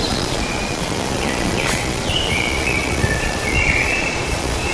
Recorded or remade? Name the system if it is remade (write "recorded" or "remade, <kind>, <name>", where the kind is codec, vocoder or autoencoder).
remade, vocoder, Vocos